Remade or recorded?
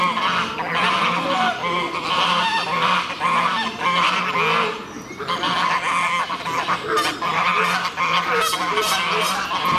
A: recorded